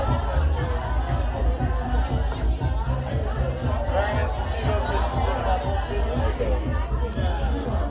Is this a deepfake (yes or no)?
no